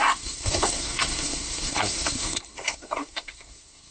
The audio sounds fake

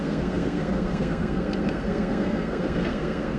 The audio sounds fake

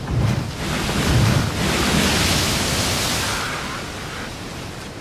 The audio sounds real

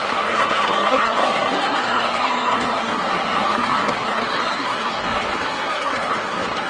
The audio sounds fake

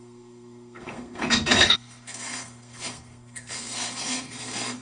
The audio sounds fake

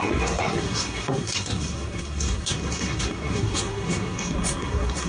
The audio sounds fake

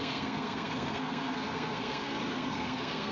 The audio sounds fake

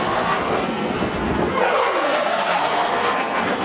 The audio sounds fake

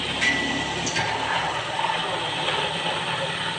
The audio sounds real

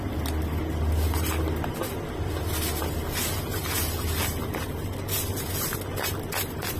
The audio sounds real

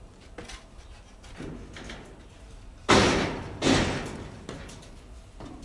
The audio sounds real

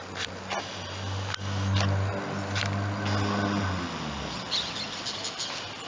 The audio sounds real